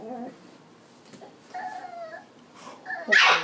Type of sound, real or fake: real